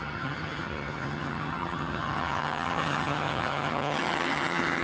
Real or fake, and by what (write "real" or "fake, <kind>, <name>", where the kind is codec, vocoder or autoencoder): fake, vocoder, HiFi-GAN